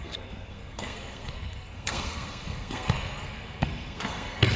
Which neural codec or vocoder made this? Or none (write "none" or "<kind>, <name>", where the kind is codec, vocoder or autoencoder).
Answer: codec, SNAC